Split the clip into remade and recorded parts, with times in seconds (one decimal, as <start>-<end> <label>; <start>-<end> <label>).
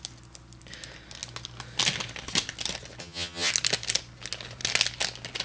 0.0-3.0 recorded; 3.0-3.5 remade; 3.5-5.4 recorded